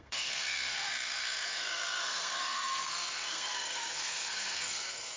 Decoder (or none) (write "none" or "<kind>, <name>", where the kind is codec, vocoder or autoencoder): codec, SNAC